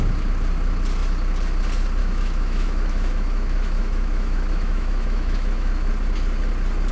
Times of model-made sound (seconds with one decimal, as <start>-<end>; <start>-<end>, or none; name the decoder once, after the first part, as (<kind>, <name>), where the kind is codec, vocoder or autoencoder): 2.0-5.9 (autoencoder, DAC-VAE)